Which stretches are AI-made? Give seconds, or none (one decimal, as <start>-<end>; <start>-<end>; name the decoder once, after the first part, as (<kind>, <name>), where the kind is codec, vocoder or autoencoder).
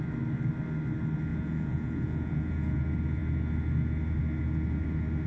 1.3-2.8 (vocoder, Vocos)